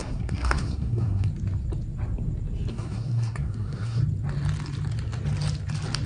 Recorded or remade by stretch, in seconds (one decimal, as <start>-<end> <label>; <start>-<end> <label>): 0.0-1.3 remade; 1.3-2.7 recorded; 2.7-4.0 remade; 4.0-6.1 recorded